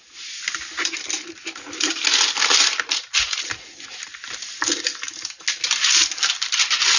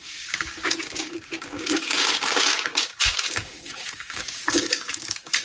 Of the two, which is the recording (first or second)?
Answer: first